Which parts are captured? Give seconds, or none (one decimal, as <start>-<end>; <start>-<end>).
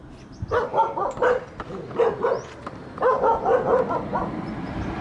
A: 0.0-0.7; 3.7-5.0